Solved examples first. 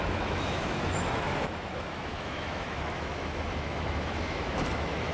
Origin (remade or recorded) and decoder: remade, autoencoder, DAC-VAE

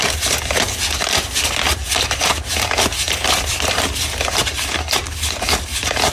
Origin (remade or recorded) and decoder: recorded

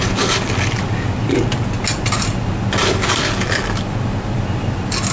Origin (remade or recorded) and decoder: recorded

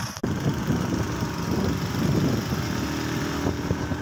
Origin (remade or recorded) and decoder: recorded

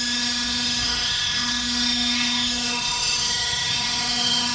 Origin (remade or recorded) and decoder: remade, autoencoder, DAC-VAE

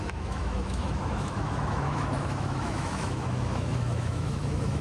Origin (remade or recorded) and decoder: remade, autoencoder, DAC-VAE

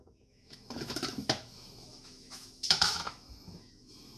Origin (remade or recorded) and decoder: remade, autoencoder, DAC-VAE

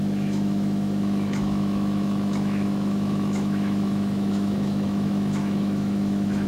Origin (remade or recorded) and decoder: remade, autoencoder, DAC-VAE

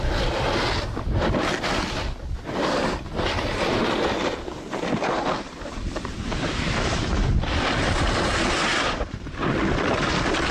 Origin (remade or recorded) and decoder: recorded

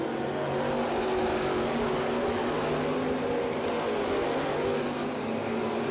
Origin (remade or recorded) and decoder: recorded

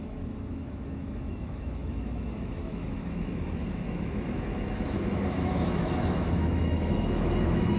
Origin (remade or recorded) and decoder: remade, autoencoder, DAC-VAE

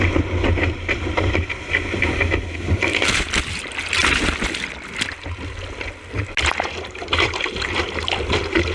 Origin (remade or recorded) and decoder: recorded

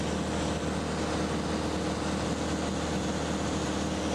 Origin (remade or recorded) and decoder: recorded